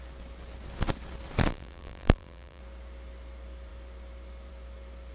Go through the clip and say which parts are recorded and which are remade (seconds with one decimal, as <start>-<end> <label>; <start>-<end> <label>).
0.0-1.5 recorded; 1.5-2.6 remade; 2.6-5.1 recorded